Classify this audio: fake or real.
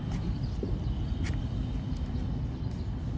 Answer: real